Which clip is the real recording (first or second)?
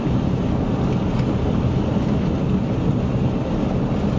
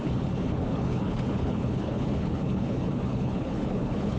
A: first